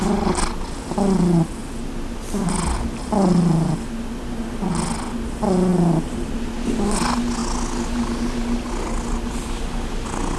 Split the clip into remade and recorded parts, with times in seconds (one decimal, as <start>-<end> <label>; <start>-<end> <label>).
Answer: 0.0-10.4 recorded